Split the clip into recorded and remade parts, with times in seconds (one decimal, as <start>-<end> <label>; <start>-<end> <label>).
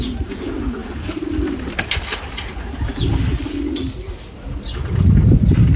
0.0-5.8 recorded